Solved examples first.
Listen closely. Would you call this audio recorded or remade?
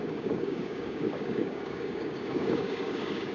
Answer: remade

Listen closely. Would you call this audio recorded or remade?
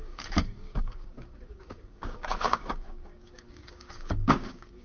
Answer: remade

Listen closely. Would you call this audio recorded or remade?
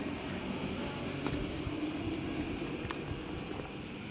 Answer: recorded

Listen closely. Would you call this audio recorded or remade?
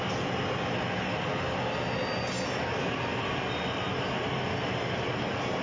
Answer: recorded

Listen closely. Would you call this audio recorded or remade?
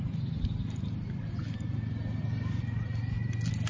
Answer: recorded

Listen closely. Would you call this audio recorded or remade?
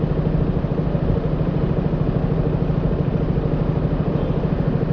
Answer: recorded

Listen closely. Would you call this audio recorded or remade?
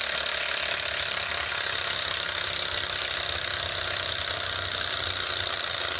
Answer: recorded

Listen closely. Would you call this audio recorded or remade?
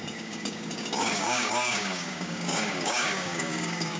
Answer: remade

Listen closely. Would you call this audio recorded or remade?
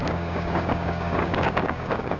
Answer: remade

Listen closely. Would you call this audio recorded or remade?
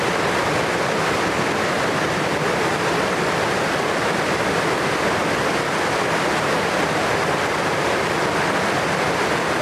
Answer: recorded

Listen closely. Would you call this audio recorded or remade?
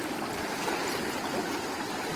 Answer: recorded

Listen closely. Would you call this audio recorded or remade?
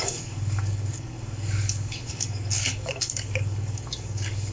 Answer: remade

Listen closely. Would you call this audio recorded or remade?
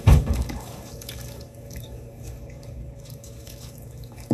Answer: remade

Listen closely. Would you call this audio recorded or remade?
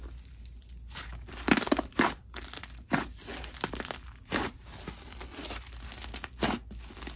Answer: recorded